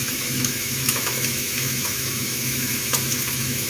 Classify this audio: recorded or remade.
remade